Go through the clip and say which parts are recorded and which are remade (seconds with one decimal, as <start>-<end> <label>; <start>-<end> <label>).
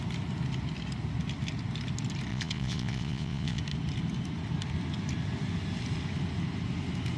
0.0-2.3 recorded; 2.3-3.6 remade; 3.6-7.2 recorded